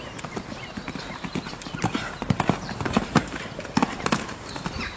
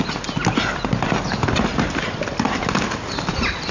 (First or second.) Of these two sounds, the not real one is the first